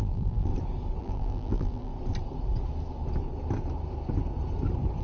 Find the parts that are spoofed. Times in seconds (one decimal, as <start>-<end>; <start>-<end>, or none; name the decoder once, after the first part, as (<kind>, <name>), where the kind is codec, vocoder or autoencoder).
0.0-0.5 (vocoder, BigVGAN v2); 1.0-1.9